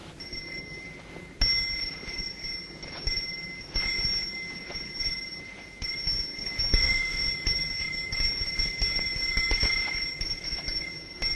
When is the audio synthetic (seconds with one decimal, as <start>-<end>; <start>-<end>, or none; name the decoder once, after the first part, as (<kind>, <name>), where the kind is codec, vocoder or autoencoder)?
6.8-7.3 (autoencoder, DAC-VAE)